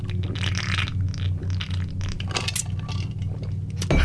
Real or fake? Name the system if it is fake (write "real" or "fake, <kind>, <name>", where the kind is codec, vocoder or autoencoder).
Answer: real